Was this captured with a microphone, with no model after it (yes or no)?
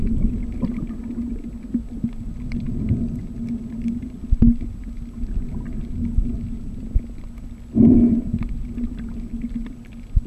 yes